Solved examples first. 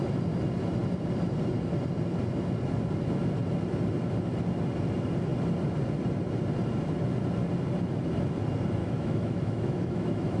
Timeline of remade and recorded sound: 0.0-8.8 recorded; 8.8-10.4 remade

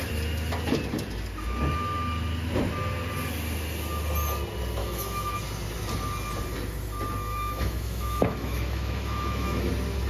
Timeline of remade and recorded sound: 0.0-4.8 recorded; 4.8-5.4 remade; 5.4-7.3 recorded; 7.3-9.7 remade; 9.7-10.1 recorded

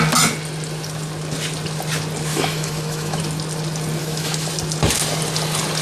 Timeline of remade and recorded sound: 0.0-2.3 recorded; 2.3-3.2 remade; 3.2-4.0 recorded; 4.0-4.5 remade; 4.5-5.8 recorded

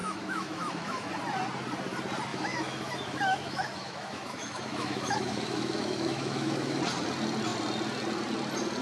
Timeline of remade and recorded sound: 0.0-1.1 remade; 1.1-2.3 recorded; 2.3-6.8 remade; 6.8-8.8 recorded

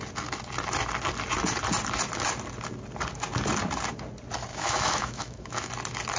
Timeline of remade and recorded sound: 0.0-4.5 recorded; 4.5-5.7 remade; 5.7-6.2 recorded

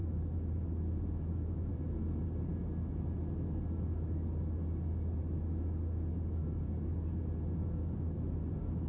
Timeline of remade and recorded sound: 0.0-1.7 remade; 1.7-5.2 recorded; 5.2-6.4 remade; 6.4-7.6 recorded; 7.6-8.9 remade